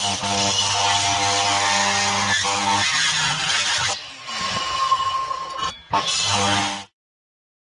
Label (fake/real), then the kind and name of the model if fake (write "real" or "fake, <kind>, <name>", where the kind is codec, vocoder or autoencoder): real